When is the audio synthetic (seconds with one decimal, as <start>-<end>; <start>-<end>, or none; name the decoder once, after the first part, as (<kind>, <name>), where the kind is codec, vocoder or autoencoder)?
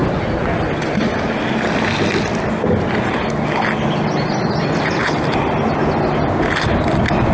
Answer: none